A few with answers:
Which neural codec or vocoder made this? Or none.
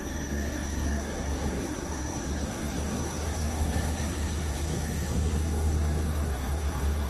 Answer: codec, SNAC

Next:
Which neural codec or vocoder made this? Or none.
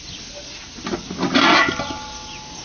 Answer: none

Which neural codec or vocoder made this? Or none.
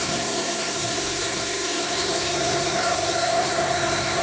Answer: codec, SNAC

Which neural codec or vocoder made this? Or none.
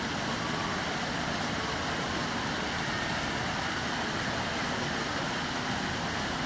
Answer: none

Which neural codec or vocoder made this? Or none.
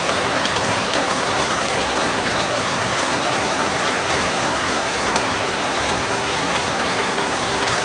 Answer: codec, SNAC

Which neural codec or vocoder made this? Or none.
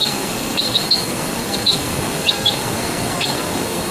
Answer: codec, SNAC